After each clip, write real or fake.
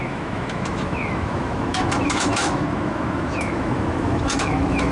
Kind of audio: fake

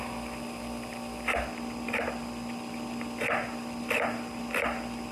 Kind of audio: real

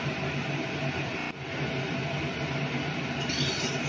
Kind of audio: real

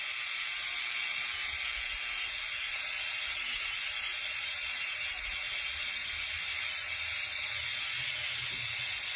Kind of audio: real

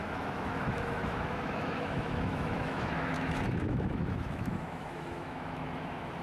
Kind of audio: fake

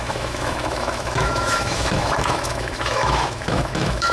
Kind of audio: fake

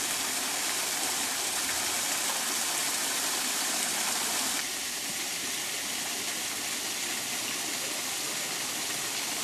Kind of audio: real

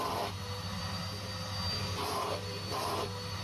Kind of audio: real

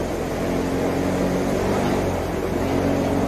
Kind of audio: real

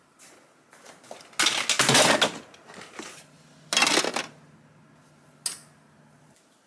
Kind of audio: real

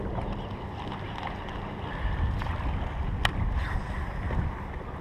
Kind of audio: real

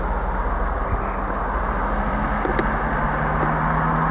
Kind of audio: real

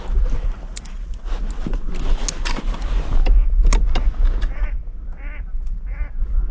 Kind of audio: real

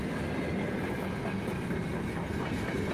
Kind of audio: real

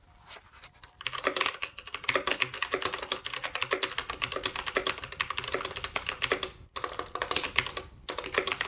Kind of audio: real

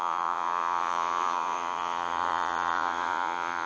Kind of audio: fake